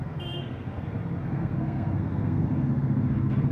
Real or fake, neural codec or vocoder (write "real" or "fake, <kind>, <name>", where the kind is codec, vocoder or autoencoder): fake, codec, SNAC